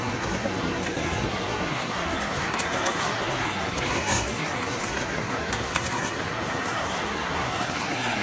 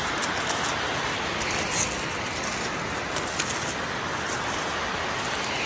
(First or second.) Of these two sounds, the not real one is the first